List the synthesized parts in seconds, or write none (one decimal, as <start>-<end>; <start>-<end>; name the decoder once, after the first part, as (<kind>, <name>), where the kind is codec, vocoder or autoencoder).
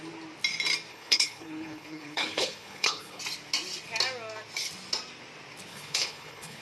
0.9-3.2 (codec, HILCodec); 5.7-6.6